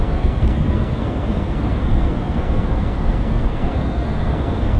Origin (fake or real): fake